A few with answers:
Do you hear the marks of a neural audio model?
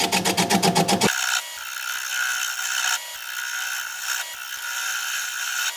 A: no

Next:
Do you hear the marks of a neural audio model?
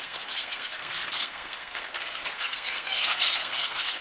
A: yes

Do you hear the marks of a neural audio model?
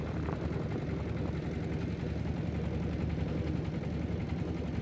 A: no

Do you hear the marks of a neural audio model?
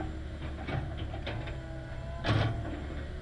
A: no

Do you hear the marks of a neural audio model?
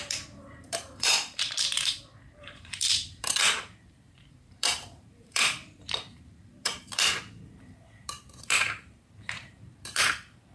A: yes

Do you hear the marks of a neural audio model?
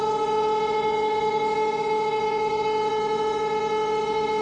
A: yes